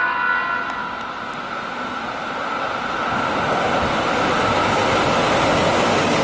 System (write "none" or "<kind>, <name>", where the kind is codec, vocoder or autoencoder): none